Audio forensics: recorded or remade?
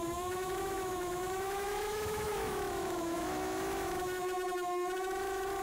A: remade